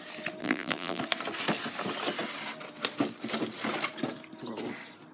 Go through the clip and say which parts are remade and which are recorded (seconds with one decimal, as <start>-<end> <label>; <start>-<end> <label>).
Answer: 0.0-0.4 recorded; 0.4-1.0 remade; 1.0-5.1 recorded